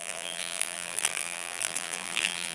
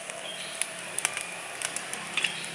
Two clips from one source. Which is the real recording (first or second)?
second